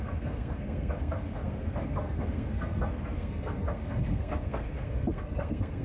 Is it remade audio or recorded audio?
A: remade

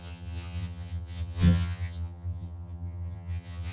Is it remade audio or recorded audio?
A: remade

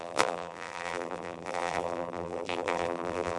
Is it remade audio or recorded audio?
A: remade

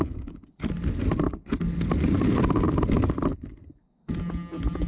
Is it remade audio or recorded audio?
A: recorded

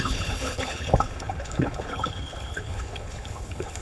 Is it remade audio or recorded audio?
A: remade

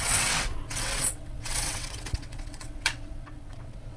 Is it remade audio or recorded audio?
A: remade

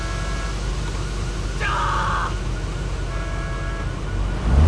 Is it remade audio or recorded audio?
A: recorded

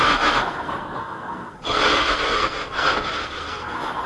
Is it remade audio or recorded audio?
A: remade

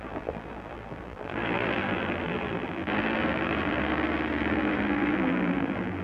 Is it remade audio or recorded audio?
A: remade